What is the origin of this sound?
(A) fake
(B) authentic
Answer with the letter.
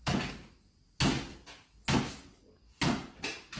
B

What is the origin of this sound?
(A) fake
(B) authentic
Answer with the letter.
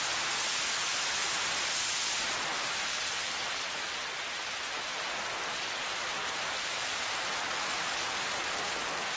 A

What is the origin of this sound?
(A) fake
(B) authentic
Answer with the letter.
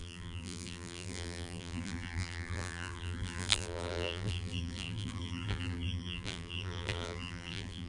A